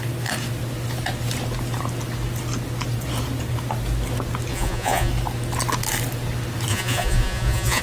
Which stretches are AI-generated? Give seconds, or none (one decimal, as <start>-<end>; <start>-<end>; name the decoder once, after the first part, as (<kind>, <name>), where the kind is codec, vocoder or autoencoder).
4.5-5.1 (vocoder, Vocos); 6.7-7.8